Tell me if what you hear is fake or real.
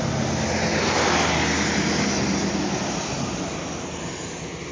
real